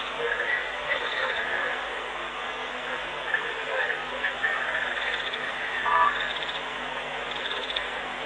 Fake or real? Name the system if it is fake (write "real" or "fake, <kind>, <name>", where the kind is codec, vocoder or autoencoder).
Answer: fake, codec, SNAC